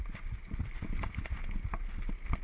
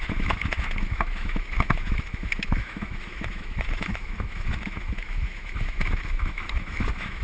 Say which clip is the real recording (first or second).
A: first